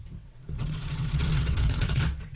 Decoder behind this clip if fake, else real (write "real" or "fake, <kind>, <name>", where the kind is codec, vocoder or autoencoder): fake, vocoder, WaveNeXt